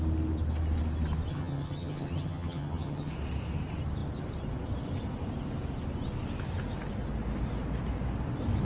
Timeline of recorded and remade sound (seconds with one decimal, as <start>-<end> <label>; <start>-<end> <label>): 0.0-1.3 recorded; 1.3-3.1 remade; 3.1-8.6 recorded